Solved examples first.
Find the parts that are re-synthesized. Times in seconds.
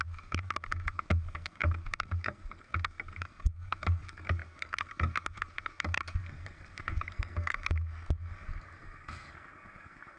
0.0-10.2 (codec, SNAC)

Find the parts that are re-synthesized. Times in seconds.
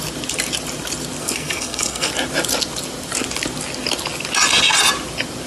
1.2-2.1 (codec, SNAC)